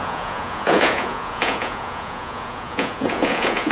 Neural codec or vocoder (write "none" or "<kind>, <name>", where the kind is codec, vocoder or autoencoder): vocoder, Vocos